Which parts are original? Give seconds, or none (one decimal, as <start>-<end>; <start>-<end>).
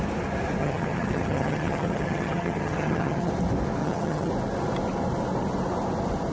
0.0-0.6; 3.3-3.8; 4.3-6.3